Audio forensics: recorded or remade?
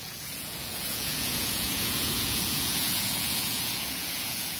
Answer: remade